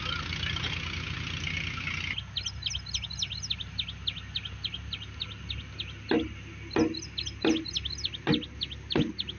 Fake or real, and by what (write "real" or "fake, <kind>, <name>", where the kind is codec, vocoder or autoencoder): real